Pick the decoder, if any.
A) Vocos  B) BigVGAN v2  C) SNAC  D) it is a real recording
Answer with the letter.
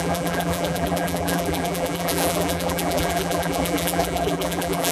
B